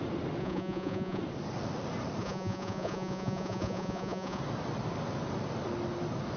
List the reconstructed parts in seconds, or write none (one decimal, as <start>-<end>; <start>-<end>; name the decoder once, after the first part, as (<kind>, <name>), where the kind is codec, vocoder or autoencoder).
0.4-1.2 (vocoder, Vocos); 2.2-4.4